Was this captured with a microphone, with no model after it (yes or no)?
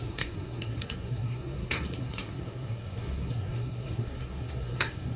no